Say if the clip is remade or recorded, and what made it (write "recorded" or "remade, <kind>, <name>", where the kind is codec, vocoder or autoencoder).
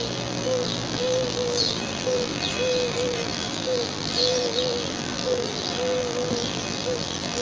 remade, vocoder, BigVGAN v2